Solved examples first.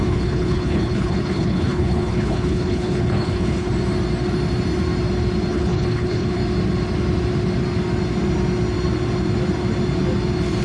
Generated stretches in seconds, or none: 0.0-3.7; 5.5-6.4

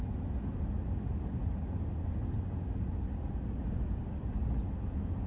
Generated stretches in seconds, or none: none

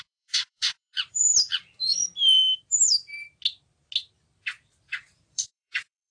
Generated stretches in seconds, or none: 0.0-1.3; 5.0-6.1